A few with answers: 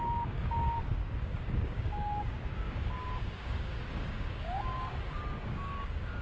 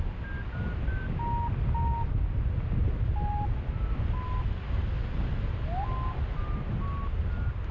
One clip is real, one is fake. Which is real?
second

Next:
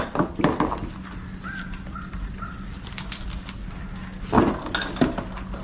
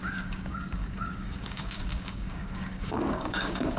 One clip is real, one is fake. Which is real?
first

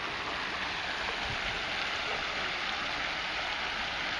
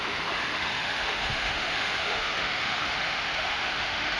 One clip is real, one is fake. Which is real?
first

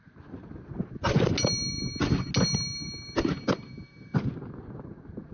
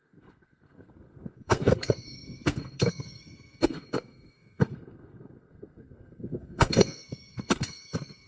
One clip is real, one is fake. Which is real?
first